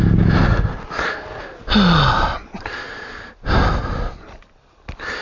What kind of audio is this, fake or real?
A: real